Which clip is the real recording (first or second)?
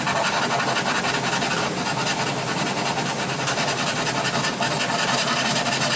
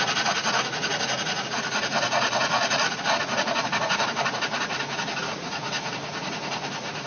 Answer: first